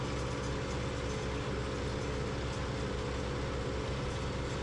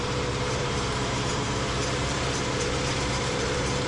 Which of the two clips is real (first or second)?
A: first